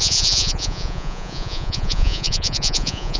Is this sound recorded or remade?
remade